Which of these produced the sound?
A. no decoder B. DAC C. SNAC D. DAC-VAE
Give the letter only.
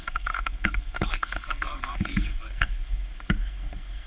C